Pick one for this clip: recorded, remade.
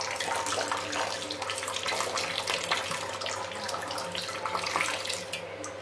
recorded